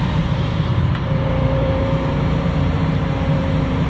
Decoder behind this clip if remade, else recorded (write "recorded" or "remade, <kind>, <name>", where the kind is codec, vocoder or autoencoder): remade, vocoder, BigVGAN v2